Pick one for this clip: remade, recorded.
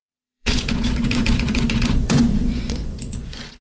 remade